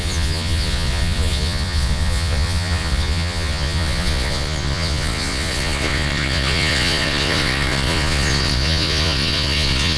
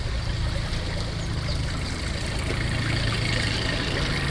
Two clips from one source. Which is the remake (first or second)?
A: first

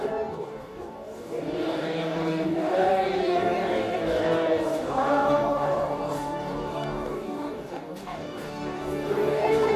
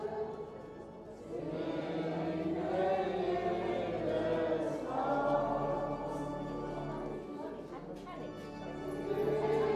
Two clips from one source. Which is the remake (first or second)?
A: first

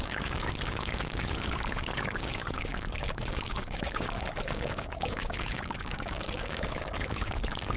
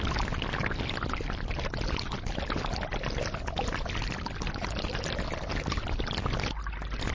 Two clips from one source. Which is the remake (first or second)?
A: first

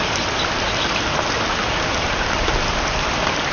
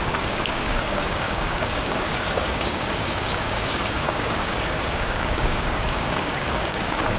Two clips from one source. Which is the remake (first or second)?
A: second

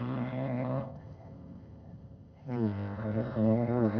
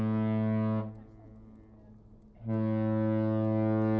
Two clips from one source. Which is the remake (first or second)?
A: first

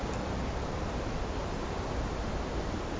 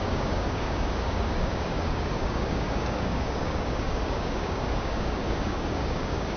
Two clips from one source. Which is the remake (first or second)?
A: second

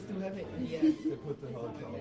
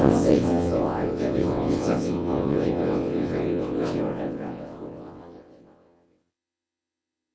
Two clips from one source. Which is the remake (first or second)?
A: second